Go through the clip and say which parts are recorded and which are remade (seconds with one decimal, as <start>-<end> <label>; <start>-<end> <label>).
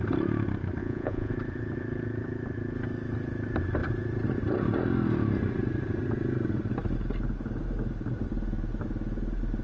0.0-0.8 recorded; 0.8-1.3 remade; 1.3-9.6 recorded